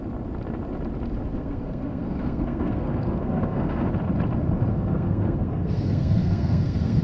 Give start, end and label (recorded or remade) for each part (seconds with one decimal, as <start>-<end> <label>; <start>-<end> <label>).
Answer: 0.0-1.4 recorded; 1.4-3.9 remade; 3.9-4.7 recorded; 4.7-7.0 remade